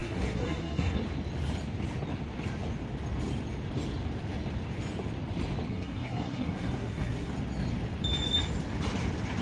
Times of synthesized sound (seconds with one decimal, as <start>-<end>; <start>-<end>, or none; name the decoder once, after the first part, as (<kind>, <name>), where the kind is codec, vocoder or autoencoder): 0.0-1.0 (codec, SNAC); 5.7-7.3